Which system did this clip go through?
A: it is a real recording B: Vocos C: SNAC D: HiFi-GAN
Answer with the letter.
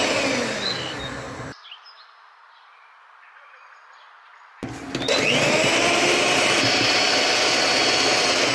A